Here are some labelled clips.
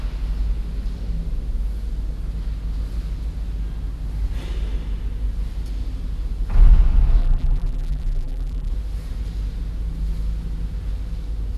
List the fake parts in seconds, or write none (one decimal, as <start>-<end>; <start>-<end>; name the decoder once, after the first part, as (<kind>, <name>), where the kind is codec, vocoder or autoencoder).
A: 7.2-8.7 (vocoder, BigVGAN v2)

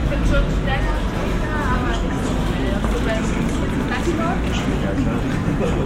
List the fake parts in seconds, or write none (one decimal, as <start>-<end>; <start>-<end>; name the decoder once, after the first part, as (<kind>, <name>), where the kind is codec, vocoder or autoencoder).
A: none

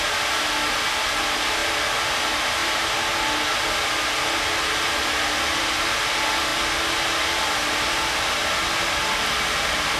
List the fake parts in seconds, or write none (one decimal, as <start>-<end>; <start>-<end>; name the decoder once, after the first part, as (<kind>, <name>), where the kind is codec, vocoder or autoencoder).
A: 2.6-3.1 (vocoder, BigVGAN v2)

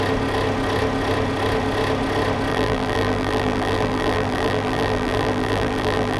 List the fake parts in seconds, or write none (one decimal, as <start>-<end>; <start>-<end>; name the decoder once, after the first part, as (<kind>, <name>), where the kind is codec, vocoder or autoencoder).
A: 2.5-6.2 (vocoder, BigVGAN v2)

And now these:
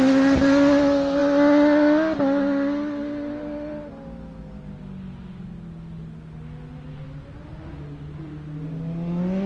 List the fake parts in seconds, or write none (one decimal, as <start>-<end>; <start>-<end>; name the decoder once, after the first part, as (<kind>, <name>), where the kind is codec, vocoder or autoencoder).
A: none

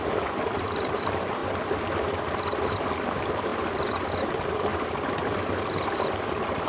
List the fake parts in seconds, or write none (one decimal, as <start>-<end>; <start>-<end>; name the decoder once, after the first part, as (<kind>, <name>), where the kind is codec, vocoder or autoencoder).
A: 0.0-1.4 (vocoder, BigVGAN v2); 2.4-4.7; 5.7-6.7

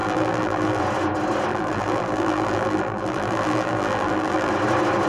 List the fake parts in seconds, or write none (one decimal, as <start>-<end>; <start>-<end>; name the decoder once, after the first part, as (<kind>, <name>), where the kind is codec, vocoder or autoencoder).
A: 0.0-0.8 (vocoder, BigVGAN v2); 1.5-4.5